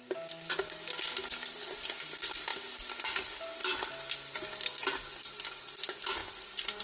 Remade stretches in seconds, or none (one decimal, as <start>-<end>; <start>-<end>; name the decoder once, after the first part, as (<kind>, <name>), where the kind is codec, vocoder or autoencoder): none